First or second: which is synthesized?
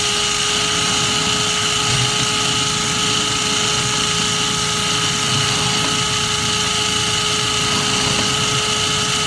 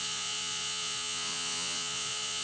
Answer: second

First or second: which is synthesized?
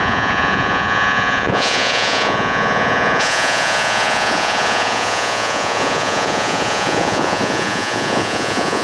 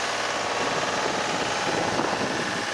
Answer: first